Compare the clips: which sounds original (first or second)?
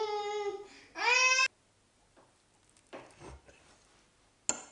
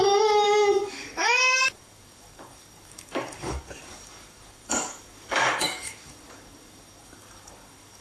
first